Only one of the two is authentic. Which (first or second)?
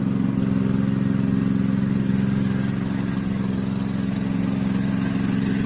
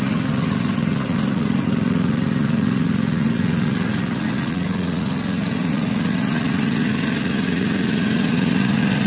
first